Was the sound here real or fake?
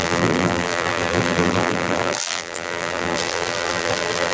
fake